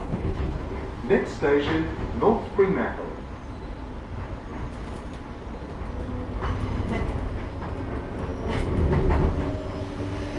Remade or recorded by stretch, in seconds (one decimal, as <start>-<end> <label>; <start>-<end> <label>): 0.0-0.7 remade; 0.7-10.4 recorded